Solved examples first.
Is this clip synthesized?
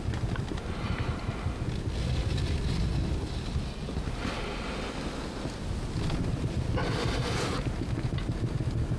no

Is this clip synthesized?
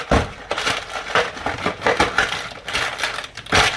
no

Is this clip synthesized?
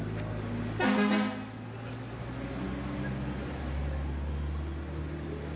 no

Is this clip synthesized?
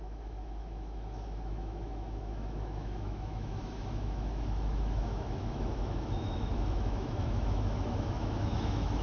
yes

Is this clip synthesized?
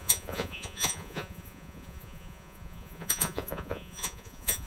yes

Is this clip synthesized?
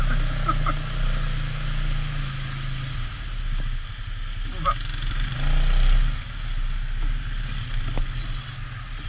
no